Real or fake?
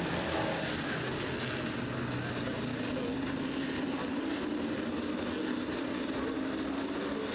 real